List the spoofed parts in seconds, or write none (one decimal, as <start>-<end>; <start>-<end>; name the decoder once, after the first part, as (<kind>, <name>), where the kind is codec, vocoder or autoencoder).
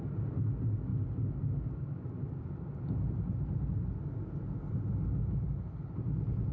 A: none